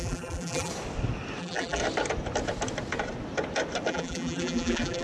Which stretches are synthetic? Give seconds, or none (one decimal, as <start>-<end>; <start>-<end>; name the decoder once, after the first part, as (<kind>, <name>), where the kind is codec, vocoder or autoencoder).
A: 0.0-0.7 (vocoder, BigVGAN v2); 1.4-1.8; 3.9-5.0